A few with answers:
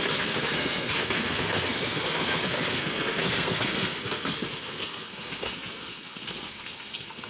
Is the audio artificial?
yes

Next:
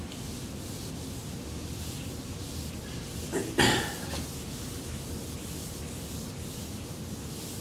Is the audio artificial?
no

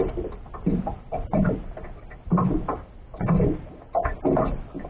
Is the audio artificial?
no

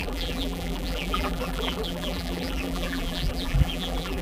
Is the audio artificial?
yes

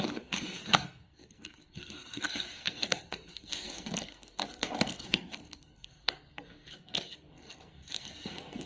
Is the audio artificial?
yes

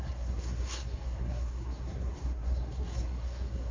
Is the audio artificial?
yes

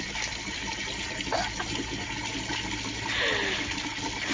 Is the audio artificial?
no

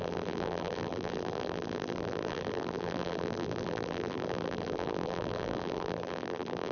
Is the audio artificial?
yes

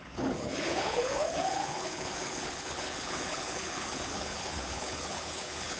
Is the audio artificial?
yes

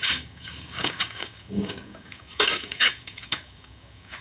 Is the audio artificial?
yes